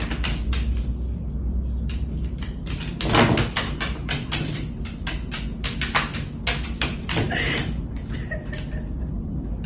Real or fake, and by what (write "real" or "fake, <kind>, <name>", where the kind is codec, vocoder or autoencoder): real